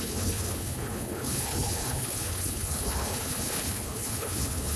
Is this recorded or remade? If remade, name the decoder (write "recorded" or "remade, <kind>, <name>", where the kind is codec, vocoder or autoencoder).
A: remade, codec, HILCodec